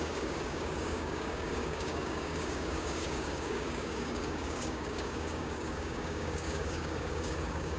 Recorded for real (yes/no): no